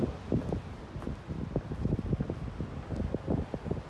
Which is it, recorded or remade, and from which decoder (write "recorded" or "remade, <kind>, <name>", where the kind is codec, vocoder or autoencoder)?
recorded